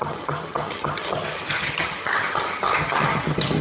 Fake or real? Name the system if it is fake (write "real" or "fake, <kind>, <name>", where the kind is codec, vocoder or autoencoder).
fake, vocoder, HiFi-GAN